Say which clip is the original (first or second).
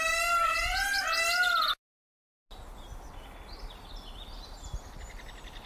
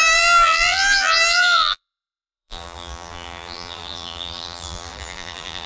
first